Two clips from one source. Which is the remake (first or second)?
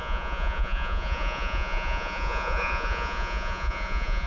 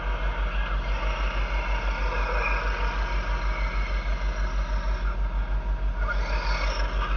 first